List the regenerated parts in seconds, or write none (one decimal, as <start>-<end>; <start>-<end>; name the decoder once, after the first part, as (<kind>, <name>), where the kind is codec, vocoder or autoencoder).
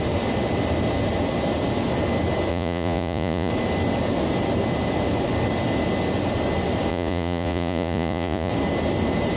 2.5-3.5 (vocoder, Vocos); 6.9-8.5